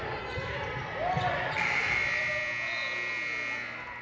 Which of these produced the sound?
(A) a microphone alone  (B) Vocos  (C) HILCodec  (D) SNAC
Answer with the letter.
A